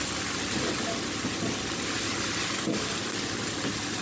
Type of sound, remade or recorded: recorded